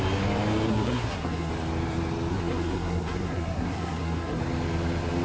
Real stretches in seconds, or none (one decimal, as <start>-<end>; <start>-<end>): 0.0-0.7; 1.5-2.3; 4.4-5.2